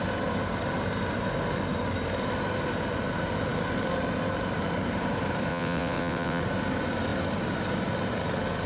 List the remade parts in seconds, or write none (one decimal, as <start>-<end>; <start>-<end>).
5.5-6.4